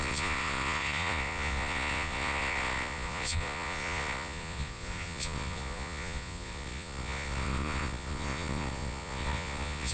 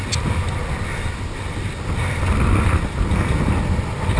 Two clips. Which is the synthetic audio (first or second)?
first